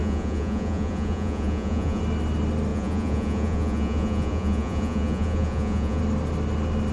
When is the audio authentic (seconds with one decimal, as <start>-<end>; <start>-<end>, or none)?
2.0-2.7; 6.0-6.9